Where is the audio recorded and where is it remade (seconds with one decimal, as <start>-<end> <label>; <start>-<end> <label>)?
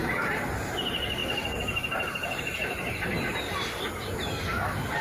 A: 0.0-5.0 recorded